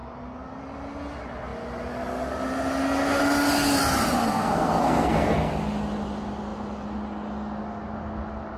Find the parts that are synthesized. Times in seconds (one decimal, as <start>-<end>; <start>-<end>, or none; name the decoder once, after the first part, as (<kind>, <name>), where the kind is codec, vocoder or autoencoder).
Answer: 4.2-5.5 (codec, SNAC)